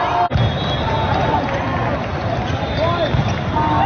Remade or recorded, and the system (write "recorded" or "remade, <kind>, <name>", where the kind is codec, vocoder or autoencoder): recorded